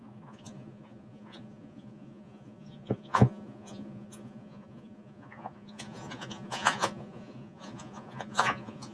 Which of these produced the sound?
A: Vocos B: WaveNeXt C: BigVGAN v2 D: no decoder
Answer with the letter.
A